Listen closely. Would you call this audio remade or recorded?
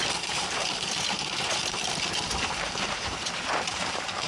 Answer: remade